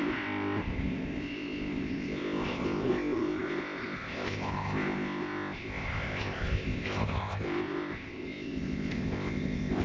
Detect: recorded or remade remade